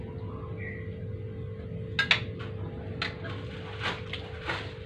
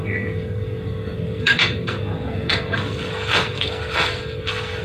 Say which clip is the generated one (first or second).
second